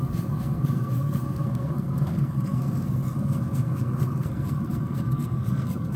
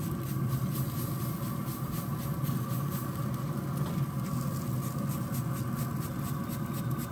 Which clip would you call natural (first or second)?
second